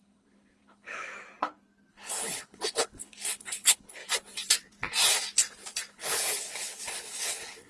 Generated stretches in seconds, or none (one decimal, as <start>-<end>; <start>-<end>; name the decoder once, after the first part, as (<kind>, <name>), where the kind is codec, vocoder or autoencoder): 0.0-1.1 (codec, HILCodec); 1.9-4.0; 5.9-7.7